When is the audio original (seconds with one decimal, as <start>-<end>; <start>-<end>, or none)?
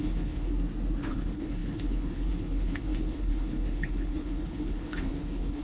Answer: 0.5-1.1